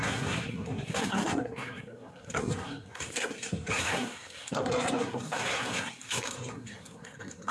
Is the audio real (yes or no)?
no